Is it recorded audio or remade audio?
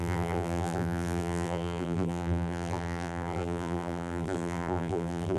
remade